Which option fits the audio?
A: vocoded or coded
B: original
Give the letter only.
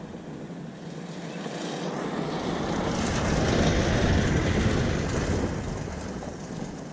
B